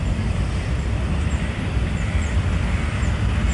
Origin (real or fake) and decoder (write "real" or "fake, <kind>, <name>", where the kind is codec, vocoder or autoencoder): fake, vocoder, BigVGAN v2